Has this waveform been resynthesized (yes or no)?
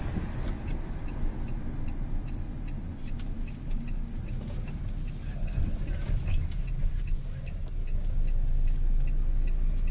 no